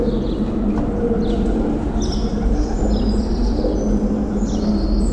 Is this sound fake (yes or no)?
no